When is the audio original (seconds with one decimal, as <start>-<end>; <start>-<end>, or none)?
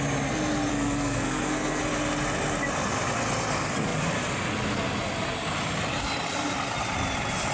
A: 0.0-0.7; 1.8-7.5